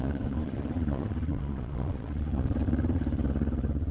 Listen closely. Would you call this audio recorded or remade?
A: remade